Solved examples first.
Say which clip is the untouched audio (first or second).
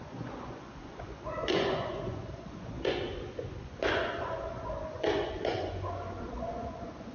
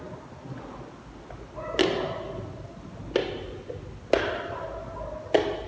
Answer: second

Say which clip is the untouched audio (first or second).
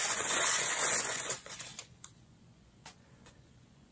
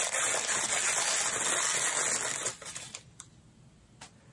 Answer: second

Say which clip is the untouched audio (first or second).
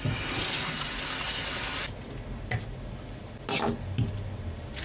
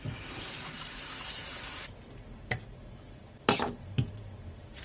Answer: first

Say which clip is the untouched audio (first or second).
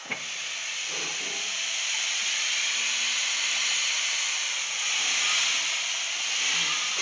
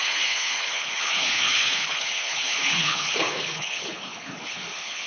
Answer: first